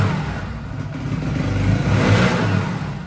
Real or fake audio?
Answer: real